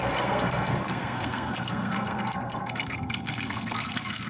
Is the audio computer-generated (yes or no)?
yes